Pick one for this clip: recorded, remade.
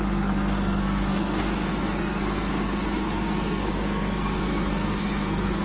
remade